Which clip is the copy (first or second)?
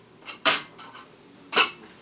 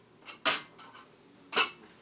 first